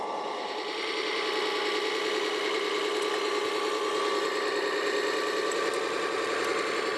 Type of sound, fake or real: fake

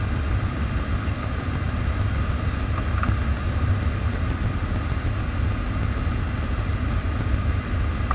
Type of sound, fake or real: real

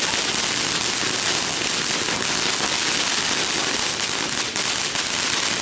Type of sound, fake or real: real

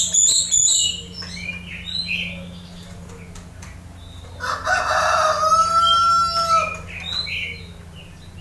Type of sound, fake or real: real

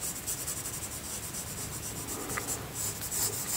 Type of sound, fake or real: real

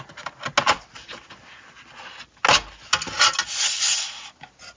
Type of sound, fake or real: real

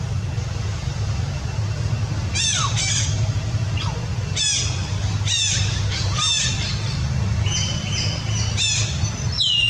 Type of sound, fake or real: real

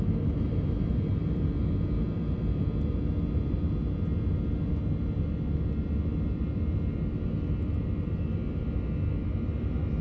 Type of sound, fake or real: real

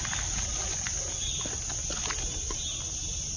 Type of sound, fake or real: real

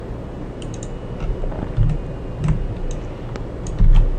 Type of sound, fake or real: real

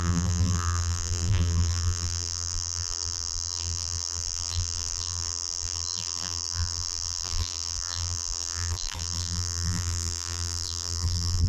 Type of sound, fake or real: fake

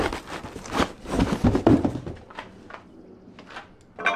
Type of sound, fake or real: real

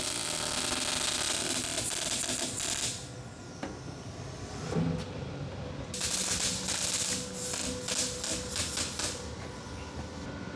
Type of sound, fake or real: real